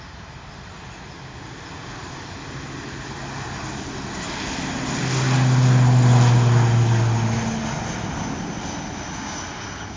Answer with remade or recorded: recorded